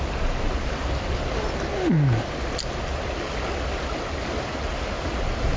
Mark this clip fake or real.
real